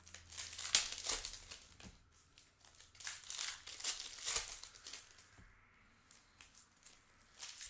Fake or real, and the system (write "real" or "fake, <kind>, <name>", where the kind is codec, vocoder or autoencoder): real